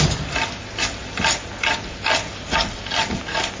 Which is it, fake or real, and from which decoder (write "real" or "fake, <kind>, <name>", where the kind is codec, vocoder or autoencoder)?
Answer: real